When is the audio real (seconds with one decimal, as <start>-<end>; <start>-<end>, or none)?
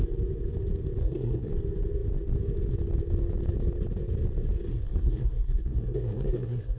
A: 0.0-1.0; 1.5-4.7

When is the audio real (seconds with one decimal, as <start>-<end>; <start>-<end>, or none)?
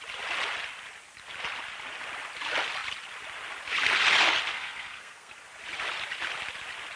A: 0.0-4.5; 5.3-7.0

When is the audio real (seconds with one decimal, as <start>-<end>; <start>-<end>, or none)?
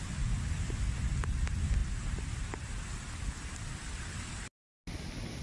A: 0.0-5.4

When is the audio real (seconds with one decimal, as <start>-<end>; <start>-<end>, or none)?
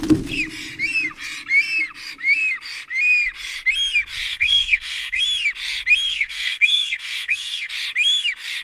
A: 0.0-4.3; 5.2-6.1; 7.7-8.6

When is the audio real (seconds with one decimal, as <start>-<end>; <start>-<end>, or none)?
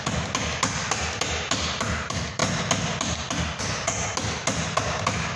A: 0.0-5.4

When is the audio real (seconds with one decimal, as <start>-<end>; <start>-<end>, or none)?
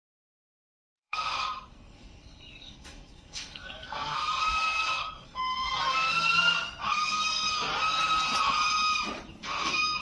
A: 7.7-9.4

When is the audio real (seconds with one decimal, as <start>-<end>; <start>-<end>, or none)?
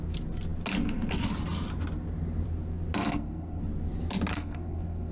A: 0.0-3.0; 3.6-4.3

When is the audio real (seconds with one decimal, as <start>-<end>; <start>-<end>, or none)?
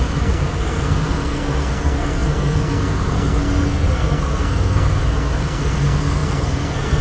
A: none